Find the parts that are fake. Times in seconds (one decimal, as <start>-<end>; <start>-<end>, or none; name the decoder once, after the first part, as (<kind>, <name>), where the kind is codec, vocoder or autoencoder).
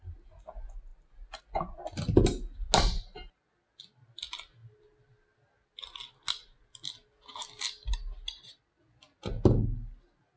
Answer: none